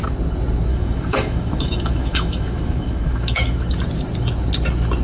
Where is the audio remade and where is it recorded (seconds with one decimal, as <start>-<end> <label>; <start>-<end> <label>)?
0.0-0.7 recorded; 0.7-3.7 remade; 3.7-5.0 recorded